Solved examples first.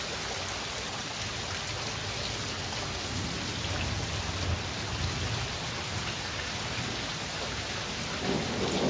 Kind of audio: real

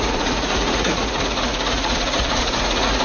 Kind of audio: fake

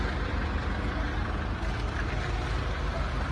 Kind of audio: real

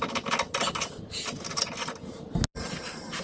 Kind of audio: real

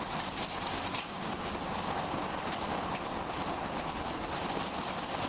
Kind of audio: real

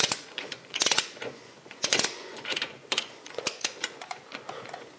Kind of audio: fake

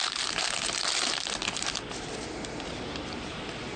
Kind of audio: real